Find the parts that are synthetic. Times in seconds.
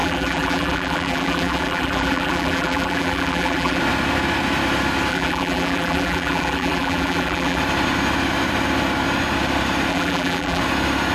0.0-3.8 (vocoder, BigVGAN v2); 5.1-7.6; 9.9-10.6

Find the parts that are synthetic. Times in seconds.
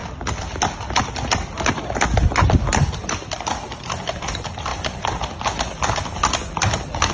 none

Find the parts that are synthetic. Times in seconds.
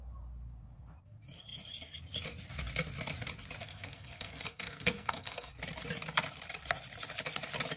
3.6-5.5 (codec, SNAC)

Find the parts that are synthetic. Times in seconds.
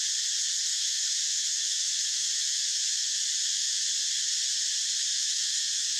0.7-3.8 (autoencoder, DAC-VAE); 5.1-6.0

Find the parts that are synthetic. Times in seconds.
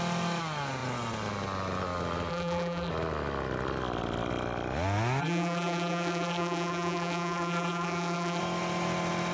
2.3-2.9 (vocoder, BigVGAN v2); 5.2-8.4